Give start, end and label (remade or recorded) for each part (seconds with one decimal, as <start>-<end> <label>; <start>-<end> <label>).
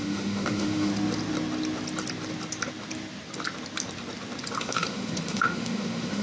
0.0-0.9 remade; 0.9-4.6 recorded; 4.6-6.2 remade